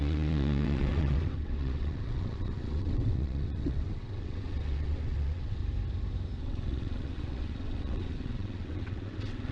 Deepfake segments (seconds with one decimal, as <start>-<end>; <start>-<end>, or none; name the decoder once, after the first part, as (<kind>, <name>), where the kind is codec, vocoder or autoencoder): 0.0-5.6 (vocoder, WaveNeXt); 6.4-9.5